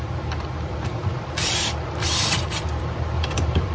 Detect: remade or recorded remade